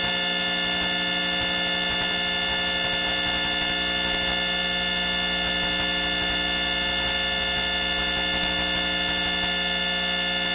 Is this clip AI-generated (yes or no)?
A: no